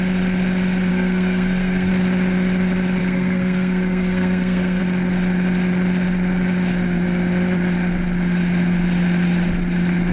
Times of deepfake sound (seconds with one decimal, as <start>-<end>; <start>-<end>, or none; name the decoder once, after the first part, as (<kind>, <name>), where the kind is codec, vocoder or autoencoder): 0.9-1.9 (codec, SNAC); 3.0-4.8